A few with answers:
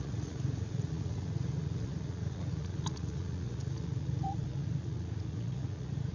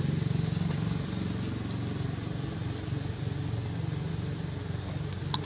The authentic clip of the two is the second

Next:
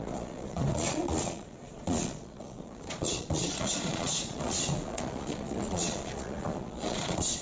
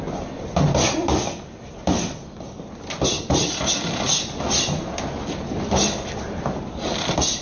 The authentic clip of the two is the second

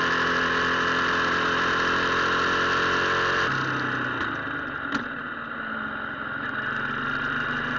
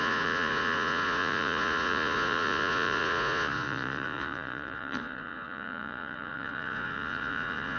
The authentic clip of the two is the first